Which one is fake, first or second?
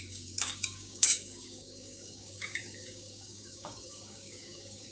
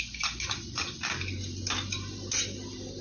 first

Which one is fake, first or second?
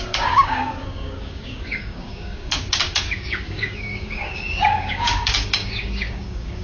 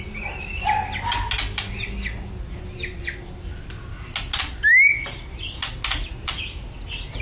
first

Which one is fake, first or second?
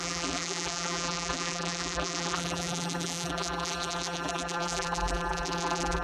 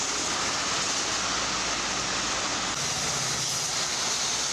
first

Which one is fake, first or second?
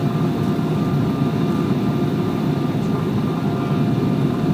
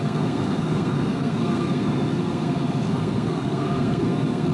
second